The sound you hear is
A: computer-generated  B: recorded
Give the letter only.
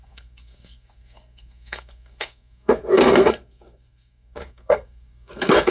A